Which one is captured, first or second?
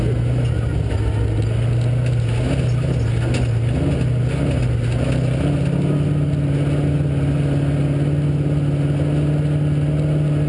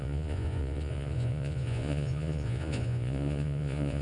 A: first